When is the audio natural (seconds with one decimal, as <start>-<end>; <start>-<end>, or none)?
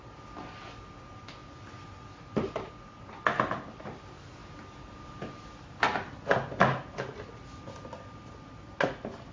0.0-9.3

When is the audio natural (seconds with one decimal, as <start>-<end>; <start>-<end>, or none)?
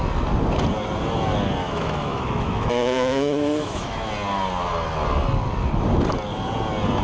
0.0-1.6; 4.1-7.0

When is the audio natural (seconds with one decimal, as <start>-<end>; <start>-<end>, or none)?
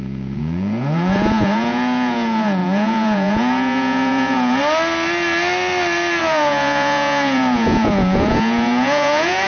4.6-6.2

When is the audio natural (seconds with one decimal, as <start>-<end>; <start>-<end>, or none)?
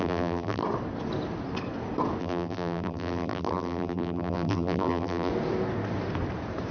0.6-2.2; 5.3-6.7